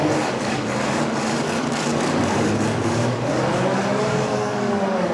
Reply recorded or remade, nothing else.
remade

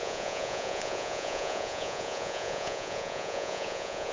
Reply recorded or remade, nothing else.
remade